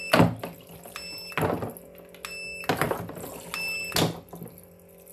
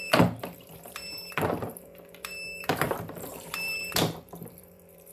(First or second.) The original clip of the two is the first